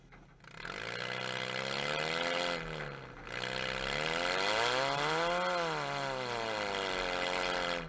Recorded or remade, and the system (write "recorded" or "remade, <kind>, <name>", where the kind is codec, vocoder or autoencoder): recorded